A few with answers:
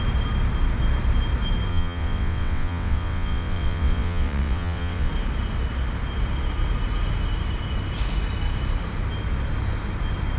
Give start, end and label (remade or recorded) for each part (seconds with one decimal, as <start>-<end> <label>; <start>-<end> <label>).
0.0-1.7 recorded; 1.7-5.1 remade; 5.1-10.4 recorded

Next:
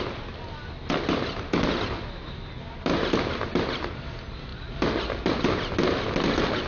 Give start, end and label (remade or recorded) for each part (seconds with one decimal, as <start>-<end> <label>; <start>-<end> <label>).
0.0-6.7 recorded

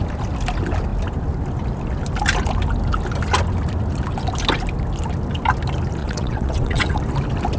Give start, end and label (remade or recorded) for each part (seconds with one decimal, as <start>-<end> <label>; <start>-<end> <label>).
0.0-6.0 recorded; 6.0-7.0 remade; 7.0-7.6 recorded

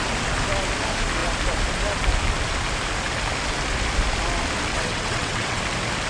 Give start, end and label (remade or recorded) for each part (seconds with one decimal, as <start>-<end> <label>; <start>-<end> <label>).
0.0-4.7 recorded; 4.7-5.6 remade; 5.6-6.1 recorded